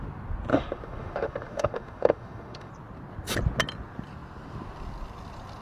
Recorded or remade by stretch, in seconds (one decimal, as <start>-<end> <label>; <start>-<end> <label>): 0.0-0.5 recorded; 0.5-2.7 remade; 2.7-5.6 recorded